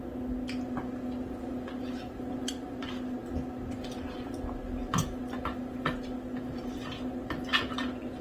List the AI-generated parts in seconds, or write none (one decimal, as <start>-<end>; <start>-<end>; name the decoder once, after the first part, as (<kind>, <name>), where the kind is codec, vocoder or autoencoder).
none